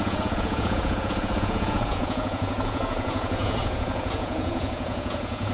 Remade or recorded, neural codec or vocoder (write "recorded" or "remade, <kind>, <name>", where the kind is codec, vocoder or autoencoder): remade, vocoder, Vocos